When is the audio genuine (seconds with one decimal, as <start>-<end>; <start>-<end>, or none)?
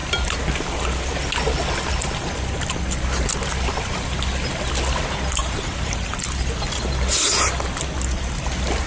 0.0-5.4; 6.2-8.9